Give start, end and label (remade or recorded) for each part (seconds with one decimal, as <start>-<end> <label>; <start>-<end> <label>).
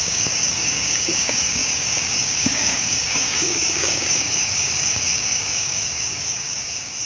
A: 0.0-7.1 remade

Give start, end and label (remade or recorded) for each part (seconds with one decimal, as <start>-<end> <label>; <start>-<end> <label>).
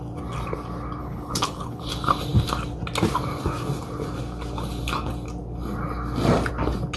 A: 0.0-1.0 recorded; 1.0-1.9 remade; 1.9-7.0 recorded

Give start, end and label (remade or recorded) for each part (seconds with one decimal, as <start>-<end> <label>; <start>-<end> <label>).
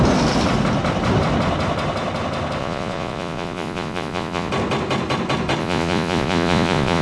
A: 0.0-2.6 recorded; 2.6-4.5 remade; 4.5-5.6 recorded; 5.6-7.0 remade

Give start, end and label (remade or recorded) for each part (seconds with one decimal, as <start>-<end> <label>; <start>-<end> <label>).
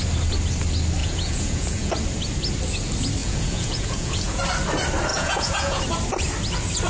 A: 0.0-1.0 recorded; 1.0-1.9 remade; 1.9-3.2 recorded; 3.2-4.4 remade; 4.4-5.1 recorded; 5.1-5.8 remade; 5.8-6.9 recorded